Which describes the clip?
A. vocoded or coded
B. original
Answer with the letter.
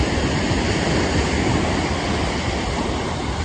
B